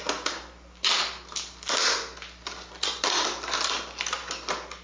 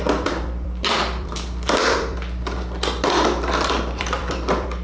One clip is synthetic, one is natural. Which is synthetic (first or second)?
second